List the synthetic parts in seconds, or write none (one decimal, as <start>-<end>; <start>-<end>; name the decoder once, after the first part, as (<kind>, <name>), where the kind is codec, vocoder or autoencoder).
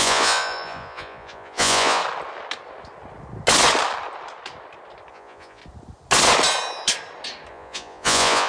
0.0-2.0 (vocoder, Vocos); 5.1-5.6; 7.5-8.5